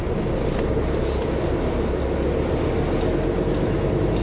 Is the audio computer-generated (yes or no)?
no